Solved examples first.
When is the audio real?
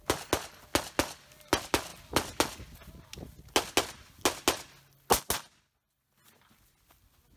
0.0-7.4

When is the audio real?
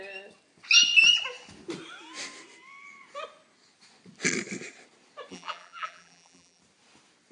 0.0-5.3; 6.6-7.3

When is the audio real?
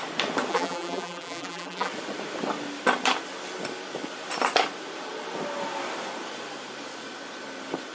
0.0-0.5; 1.9-7.9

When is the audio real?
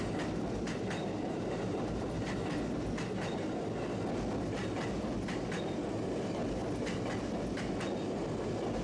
0.0-1.0; 2.1-8.8